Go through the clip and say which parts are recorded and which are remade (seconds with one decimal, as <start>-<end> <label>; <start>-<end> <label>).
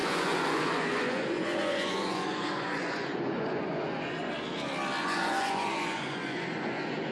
0.0-4.3 remade; 4.3-5.0 recorded; 5.0-7.1 remade